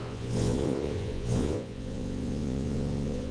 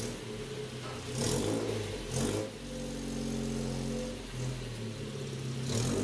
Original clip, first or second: second